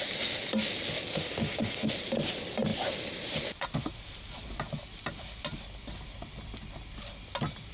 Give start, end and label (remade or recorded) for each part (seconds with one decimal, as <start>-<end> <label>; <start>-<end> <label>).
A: 0.0-1.1 recorded; 1.1-1.9 remade; 1.9-7.7 recorded